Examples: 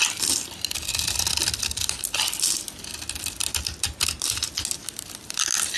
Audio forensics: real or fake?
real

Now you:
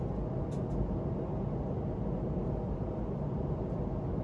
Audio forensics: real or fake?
real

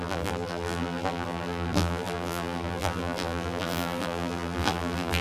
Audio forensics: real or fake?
fake